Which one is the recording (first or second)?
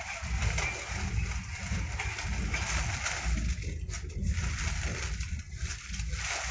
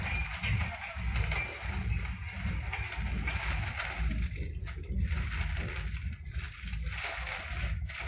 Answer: second